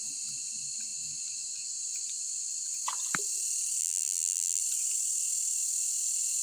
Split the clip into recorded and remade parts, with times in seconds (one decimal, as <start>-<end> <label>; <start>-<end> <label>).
0.0-3.8 recorded; 3.8-4.6 remade; 4.6-6.4 recorded

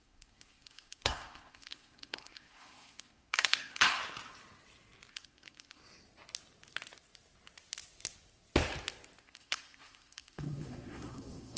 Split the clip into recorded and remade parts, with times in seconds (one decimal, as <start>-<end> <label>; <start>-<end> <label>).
0.0-4.0 remade; 4.0-5.1 recorded; 5.1-5.8 remade; 5.8-9.2 recorded; 9.2-11.6 remade

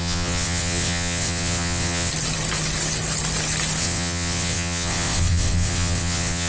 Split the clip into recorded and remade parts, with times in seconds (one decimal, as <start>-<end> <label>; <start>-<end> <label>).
0.0-2.1 remade; 2.1-3.8 recorded; 3.8-6.5 remade

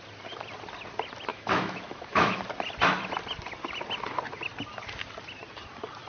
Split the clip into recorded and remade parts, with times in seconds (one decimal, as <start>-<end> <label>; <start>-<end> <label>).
0.0-1.3 recorded; 1.3-2.4 remade; 2.4-6.1 recorded

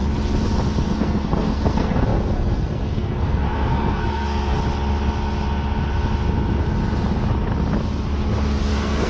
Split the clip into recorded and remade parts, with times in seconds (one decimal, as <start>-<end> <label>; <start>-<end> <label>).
0.0-0.8 recorded; 0.8-4.6 remade; 4.6-8.7 recorded; 8.7-9.1 remade

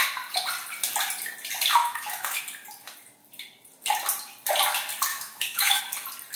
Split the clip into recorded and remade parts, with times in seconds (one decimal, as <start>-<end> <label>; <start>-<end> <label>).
0.0-1.8 recorded; 1.8-2.4 remade; 2.4-5.1 recorded; 5.1-5.8 remade; 5.8-6.4 recorded